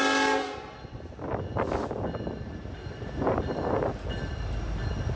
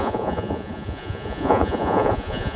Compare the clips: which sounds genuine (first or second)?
first